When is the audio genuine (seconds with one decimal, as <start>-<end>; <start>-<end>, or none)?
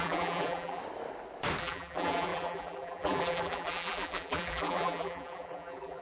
0.8-1.6